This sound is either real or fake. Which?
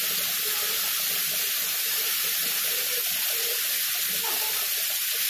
real